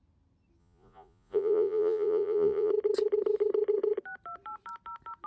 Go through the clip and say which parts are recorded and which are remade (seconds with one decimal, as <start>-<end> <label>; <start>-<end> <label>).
0.0-0.6 recorded; 0.6-2.7 remade; 2.7-5.3 recorded